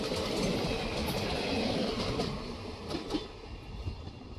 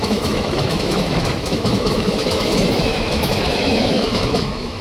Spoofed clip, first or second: second